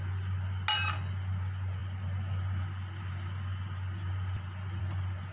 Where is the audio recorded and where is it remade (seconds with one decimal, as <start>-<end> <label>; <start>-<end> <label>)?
0.0-5.3 recorded